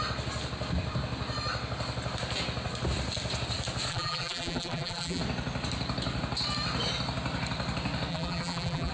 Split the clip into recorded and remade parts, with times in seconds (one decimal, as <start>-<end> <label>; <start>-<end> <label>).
0.0-3.9 recorded; 3.9-5.2 remade; 5.2-8.1 recorded; 8.1-8.9 remade